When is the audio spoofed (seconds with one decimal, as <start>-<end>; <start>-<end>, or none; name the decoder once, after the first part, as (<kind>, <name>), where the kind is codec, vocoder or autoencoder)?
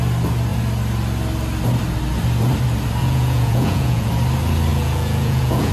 3.0-4.1 (vocoder, Vocos); 4.7-5.7